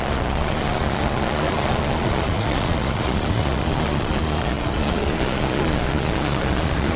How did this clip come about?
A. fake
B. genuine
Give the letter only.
A